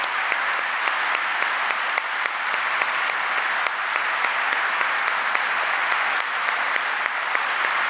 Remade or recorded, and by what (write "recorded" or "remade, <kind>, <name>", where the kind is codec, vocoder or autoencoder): recorded